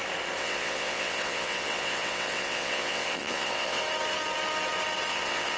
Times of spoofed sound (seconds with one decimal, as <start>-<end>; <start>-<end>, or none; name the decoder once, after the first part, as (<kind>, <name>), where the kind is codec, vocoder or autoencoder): 0.4-3.8 (vocoder, WaveNeXt); 5.1-5.6